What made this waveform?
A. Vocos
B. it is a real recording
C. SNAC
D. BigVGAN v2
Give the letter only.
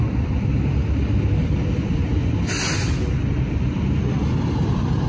B